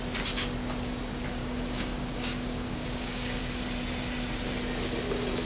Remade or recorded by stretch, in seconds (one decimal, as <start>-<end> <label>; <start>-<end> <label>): 0.0-1.4 recorded; 1.4-3.4 remade; 3.4-5.5 recorded